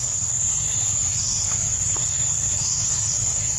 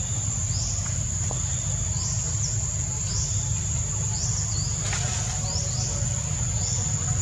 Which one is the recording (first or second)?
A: second